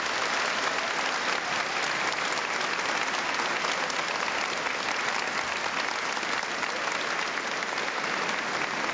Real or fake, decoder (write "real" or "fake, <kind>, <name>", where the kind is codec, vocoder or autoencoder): real